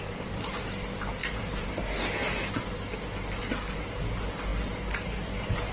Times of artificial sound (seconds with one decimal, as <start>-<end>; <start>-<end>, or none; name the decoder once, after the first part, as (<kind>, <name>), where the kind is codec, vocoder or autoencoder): 1.2-1.8 (vocoder, BigVGAN v2)